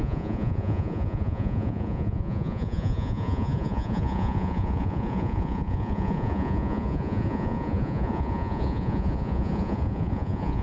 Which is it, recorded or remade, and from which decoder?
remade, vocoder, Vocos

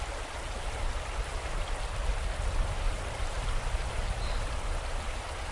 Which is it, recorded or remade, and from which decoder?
recorded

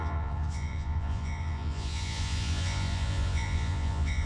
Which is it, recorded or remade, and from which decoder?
remade, vocoder, Vocos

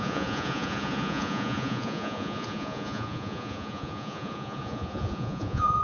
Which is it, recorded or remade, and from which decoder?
remade, vocoder, Vocos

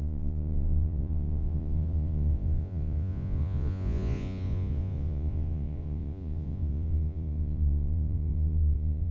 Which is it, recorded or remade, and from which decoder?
remade, vocoder, Vocos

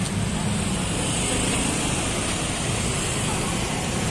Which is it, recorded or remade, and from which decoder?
recorded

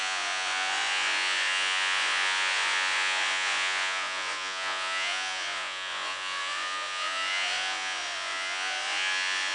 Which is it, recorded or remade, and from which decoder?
remade, vocoder, Vocos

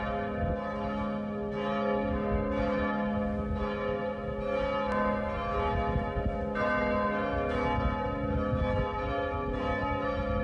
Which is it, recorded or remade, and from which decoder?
recorded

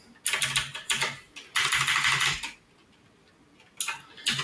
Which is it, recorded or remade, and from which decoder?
recorded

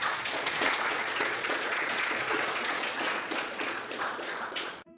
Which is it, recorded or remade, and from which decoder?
remade, vocoder, Vocos